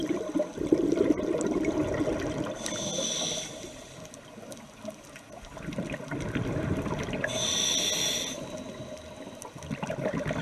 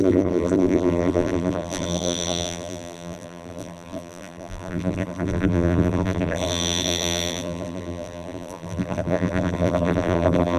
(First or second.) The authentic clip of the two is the first